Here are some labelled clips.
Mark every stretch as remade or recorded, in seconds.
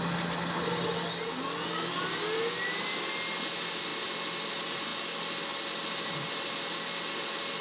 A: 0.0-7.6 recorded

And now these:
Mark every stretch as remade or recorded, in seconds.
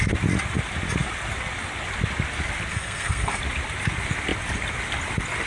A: 0.0-2.7 recorded; 2.7-3.4 remade; 3.4-5.5 recorded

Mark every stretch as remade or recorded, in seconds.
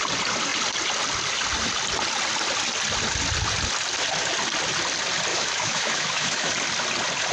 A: 0.0-5.3 recorded; 5.3-6.5 remade; 6.5-7.3 recorded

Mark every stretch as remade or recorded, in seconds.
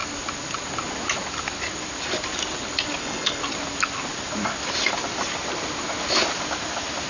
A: 0.0-3.0 recorded; 3.0-3.4 remade; 3.4-7.1 recorded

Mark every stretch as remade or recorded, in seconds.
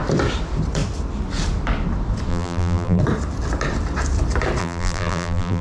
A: 0.0-2.3 recorded; 2.3-3.0 remade; 3.0-4.6 recorded; 4.6-5.6 remade